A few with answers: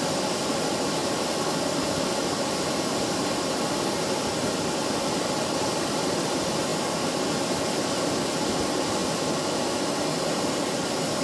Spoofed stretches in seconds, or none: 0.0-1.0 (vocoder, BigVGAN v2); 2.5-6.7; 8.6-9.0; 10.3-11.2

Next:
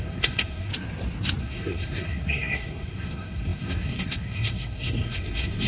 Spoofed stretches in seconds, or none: 0.0-0.7 (codec, SNAC); 1.4-5.7

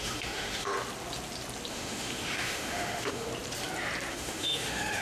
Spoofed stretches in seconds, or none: 0.0-0.7 (autoencoder, DAC-VAE); 1.7-3.3; 4.1-5.0

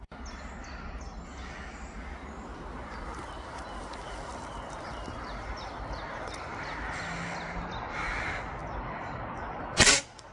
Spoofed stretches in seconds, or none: 4.3-5.7 (vocoder, BigVGAN v2); 8.6-10.3